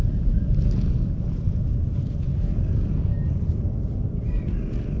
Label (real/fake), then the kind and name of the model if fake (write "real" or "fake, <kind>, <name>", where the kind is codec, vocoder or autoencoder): real